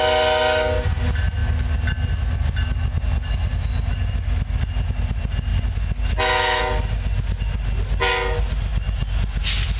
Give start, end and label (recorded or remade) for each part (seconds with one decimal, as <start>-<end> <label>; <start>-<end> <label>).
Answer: 0.0-9.8 recorded